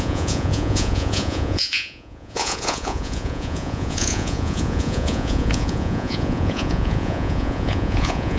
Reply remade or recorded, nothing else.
remade